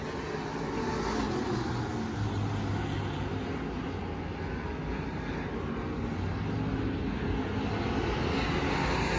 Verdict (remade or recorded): recorded